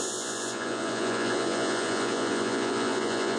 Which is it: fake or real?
fake